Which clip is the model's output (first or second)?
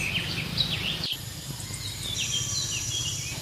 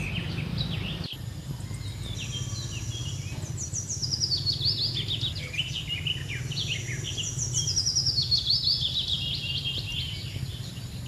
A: first